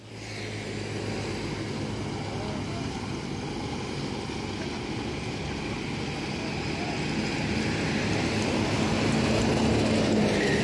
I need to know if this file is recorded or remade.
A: recorded